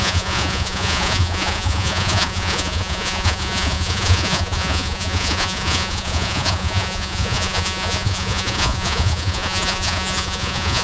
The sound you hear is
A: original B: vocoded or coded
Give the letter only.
B